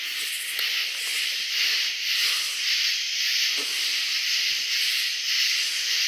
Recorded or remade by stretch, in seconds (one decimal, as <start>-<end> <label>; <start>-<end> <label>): 0.0-6.1 recorded